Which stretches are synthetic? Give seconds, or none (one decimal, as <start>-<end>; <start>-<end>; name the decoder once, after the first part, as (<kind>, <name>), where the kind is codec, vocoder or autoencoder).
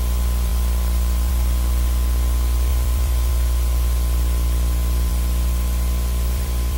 0.5-1.3 (vocoder, BigVGAN v2); 2.7-3.3; 5.1-6.8